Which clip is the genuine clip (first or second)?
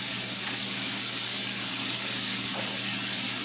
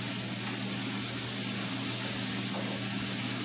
second